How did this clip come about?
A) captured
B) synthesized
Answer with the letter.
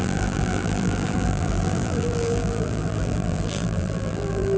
B